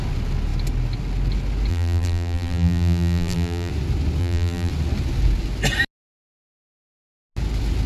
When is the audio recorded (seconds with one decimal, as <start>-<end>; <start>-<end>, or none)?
0.0-1.7; 3.7-4.2; 4.7-7.9